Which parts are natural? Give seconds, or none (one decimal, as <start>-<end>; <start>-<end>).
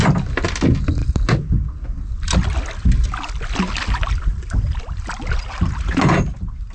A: 0.0-6.7